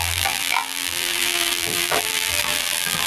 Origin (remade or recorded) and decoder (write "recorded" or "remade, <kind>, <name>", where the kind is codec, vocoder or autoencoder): remade, vocoder, BigVGAN v2